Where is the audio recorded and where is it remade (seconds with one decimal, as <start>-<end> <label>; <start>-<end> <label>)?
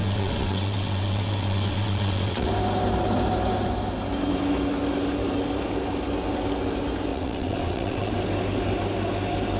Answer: 0.0-2.5 remade; 2.5-7.1 recorded; 7.1-8.1 remade; 8.1-9.6 recorded